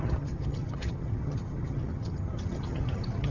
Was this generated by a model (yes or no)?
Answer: yes